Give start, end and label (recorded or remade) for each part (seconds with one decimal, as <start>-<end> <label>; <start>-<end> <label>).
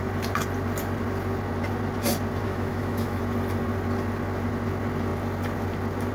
0.0-2.4 recorded; 2.4-3.2 remade; 3.2-6.1 recorded